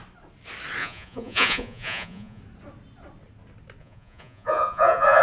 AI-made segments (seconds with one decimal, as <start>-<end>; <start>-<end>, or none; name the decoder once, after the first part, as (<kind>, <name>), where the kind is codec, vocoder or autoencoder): 0.8-2.4 (vocoder, Vocos); 3.8-5.2